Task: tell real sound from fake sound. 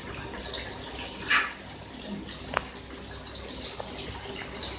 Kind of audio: real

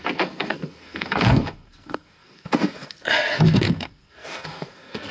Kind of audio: fake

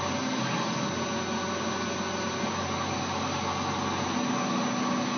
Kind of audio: real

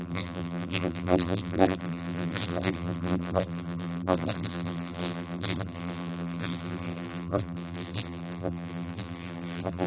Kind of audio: fake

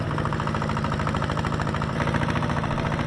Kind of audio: real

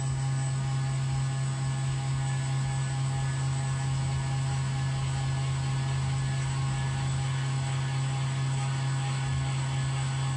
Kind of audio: real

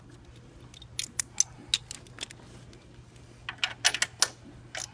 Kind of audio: real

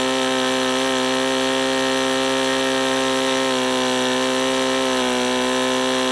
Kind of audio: real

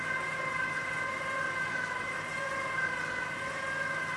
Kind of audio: real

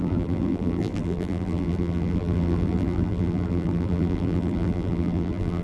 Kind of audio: fake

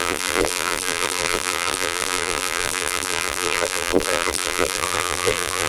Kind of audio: fake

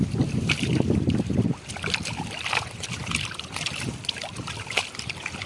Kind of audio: fake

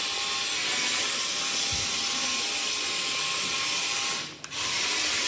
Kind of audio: real